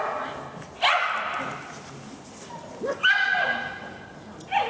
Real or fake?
real